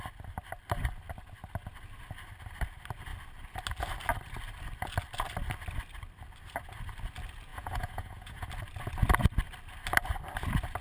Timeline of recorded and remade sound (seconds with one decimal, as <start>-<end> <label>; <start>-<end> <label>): 0.0-7.5 recorded; 7.5-8.5 remade; 8.5-10.8 recorded